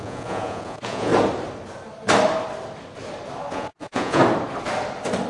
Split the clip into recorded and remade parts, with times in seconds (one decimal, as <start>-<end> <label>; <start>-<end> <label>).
0.0-1.1 remade; 1.1-3.5 recorded; 3.5-4.2 remade; 4.2-5.3 recorded